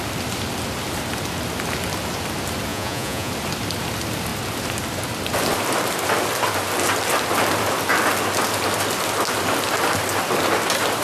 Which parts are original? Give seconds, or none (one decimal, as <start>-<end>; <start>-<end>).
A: 0.0-2.7; 3.3-11.0